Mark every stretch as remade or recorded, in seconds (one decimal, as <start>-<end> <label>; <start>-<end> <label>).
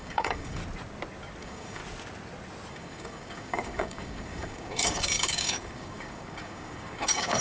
0.0-0.6 remade; 0.6-1.4 recorded; 1.4-1.8 remade; 1.8-2.7 recorded; 2.7-7.4 remade